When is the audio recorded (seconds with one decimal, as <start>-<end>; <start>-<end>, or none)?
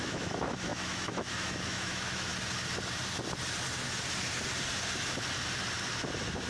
2.3-6.5